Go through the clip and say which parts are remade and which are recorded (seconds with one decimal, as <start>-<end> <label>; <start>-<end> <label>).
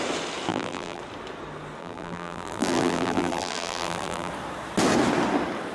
0.0-0.5 recorded; 0.5-1.0 remade; 1.0-1.8 recorded; 1.8-4.3 remade; 4.3-5.7 recorded